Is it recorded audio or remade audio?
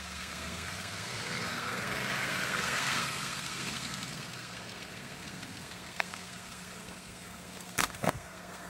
remade